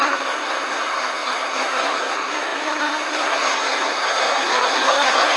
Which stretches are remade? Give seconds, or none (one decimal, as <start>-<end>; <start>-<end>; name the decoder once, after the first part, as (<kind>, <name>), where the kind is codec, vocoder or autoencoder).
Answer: 0.0-5.4 (codec, SNAC)